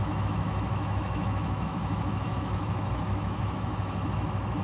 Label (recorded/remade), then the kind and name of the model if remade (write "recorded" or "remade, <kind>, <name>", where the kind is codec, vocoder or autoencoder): remade, autoencoder, DAC-VAE